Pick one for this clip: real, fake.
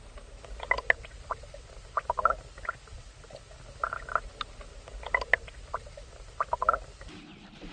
real